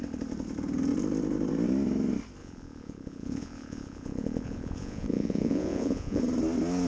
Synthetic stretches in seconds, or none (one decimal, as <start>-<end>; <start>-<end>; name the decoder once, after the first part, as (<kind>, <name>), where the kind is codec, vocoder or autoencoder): 2.4-6.2 (vocoder, Vocos)